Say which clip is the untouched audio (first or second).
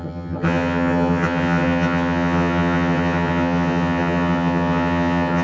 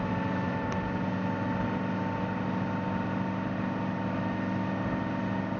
second